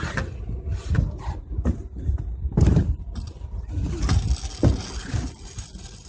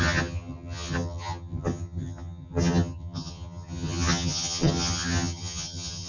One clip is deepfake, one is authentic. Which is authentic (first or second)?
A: first